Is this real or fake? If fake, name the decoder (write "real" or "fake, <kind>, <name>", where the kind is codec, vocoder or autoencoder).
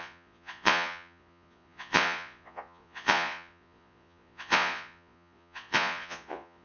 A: fake, vocoder, Vocos